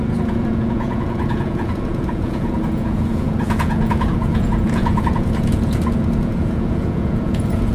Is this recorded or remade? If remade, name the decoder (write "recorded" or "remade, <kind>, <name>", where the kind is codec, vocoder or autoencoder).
remade, vocoder, Vocos